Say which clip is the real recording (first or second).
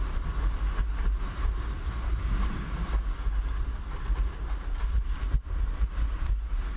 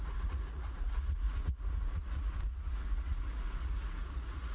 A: first